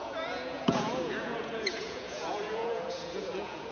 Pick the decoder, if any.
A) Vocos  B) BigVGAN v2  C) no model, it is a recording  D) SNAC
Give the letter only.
A